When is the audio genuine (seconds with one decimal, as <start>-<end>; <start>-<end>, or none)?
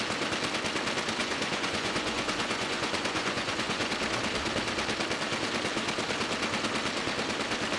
0.0-1.2; 3.9-7.8